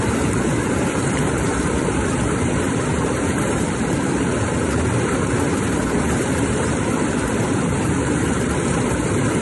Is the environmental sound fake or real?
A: fake